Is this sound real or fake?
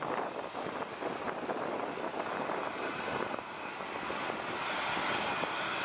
real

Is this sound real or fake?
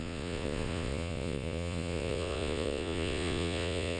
fake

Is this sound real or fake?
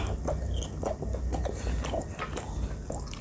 real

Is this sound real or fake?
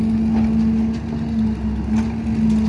real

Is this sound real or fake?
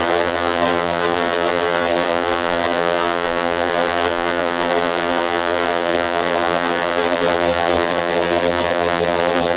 fake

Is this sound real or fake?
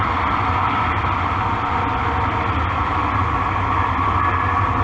real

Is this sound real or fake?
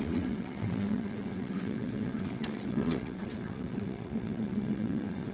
fake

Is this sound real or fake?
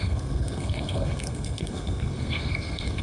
fake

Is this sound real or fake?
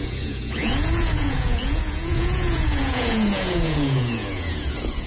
fake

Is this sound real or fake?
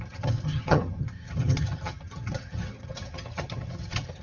fake